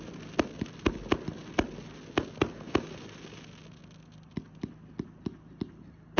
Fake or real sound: real